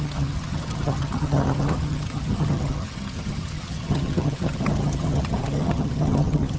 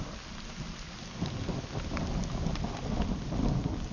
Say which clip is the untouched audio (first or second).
second